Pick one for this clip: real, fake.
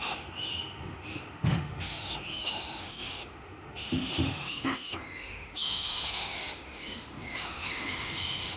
fake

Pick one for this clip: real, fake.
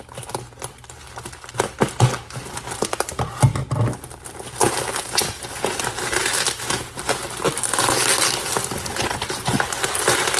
real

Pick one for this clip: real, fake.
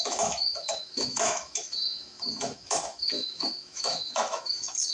fake